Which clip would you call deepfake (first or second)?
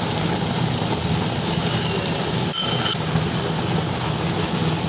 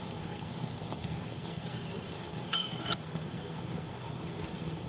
second